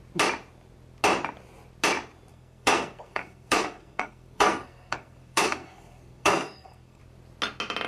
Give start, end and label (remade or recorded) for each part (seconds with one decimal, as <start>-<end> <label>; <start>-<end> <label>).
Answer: 0.0-2.3 recorded; 2.3-7.0 remade; 7.0-7.9 recorded